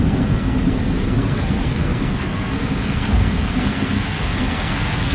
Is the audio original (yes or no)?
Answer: no